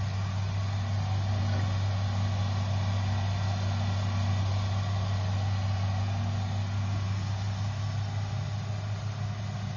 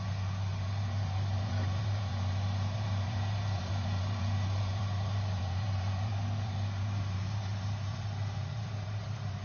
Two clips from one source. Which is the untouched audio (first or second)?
first